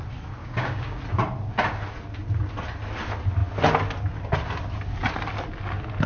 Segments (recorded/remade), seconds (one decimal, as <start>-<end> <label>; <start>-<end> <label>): 0.0-0.4 recorded; 0.4-1.0 remade; 1.0-6.1 recorded